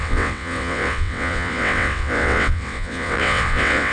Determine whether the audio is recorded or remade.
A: remade